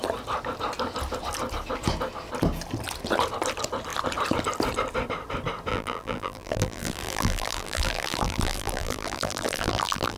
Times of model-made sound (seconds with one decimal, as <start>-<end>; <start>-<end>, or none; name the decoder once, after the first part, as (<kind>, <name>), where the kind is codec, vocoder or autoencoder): 5.7-10.2 (vocoder, BigVGAN v2)